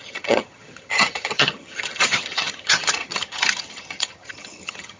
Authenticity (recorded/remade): remade